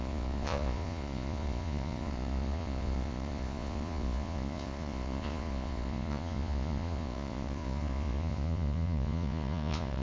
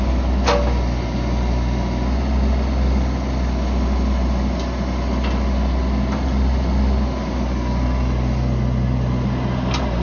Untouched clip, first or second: second